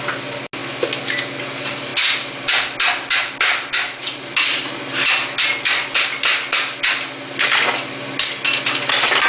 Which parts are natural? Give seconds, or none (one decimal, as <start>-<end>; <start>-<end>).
0.0-9.3